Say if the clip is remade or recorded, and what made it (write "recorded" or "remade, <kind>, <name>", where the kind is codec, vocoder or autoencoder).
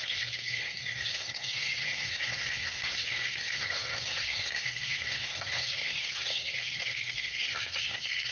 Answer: remade, codec, SNAC